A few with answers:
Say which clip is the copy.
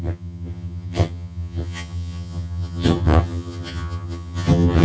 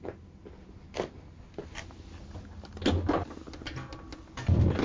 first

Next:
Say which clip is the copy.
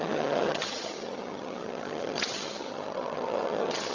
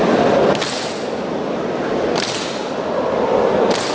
first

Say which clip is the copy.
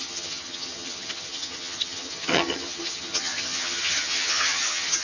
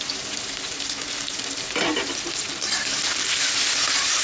first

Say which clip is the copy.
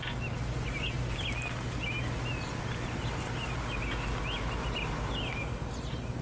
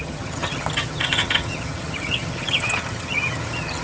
second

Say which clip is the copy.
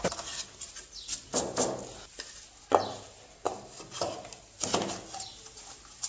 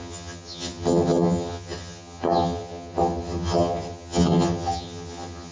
second